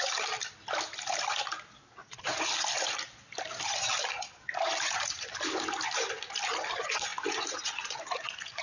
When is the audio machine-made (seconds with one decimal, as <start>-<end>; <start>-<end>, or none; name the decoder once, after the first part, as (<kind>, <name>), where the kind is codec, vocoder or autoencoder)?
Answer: 2.0-2.5 (vocoder, Vocos); 7.1-8.6